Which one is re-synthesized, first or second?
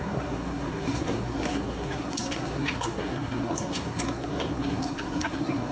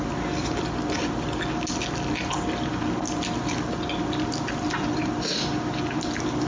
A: first